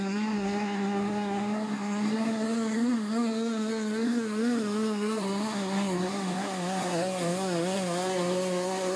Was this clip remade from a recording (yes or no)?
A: yes